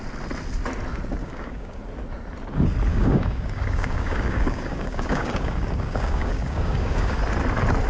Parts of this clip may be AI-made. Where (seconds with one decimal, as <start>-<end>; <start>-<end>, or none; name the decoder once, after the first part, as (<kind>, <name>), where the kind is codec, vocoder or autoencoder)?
1.2-1.8 (codec, DAC); 2.9-7.2